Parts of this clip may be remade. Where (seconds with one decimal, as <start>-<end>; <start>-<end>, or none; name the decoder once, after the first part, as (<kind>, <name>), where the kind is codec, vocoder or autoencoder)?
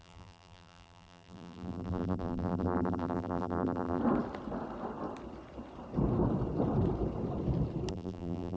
0.0-4.0 (vocoder, BigVGAN v2); 7.9-8.6